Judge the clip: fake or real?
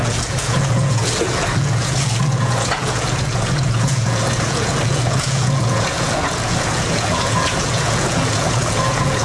fake